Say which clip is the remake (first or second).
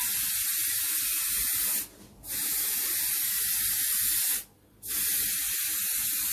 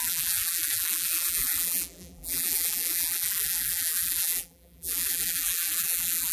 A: second